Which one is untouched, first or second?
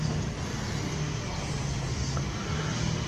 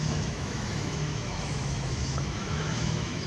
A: first